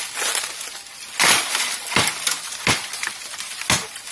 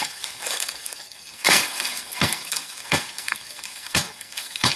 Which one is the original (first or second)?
first